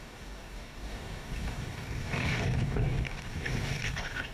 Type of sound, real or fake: fake